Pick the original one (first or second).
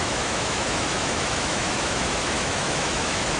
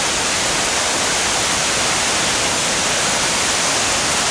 second